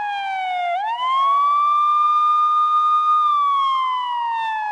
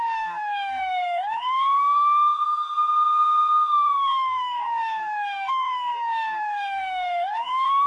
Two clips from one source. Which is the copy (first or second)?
second